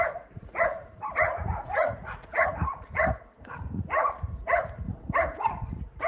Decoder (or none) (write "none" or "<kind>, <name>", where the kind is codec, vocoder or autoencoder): vocoder, Vocos